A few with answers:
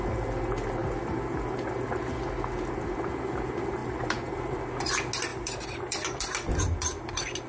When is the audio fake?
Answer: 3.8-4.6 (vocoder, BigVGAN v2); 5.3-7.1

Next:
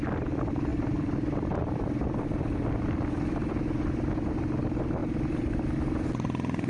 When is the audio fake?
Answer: 0.7-4.6 (vocoder, BigVGAN v2); 5.0-5.5